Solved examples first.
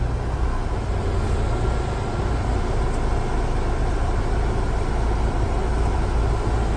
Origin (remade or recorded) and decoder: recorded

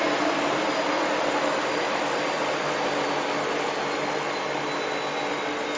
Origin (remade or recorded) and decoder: recorded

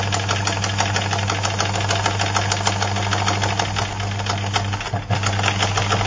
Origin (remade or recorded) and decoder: recorded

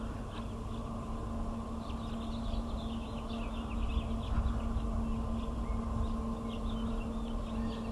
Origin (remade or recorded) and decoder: recorded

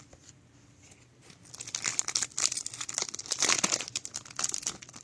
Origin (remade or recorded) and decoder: recorded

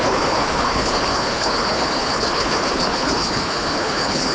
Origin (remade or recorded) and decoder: remade, codec, HILCodec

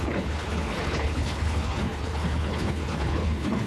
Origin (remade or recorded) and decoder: remade, codec, HILCodec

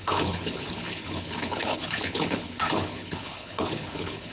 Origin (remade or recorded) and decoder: remade, codec, HILCodec